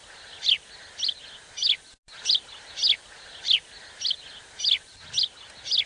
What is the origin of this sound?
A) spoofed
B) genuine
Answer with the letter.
B